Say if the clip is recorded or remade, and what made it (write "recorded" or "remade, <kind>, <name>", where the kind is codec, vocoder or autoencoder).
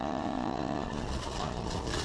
remade, vocoder, Vocos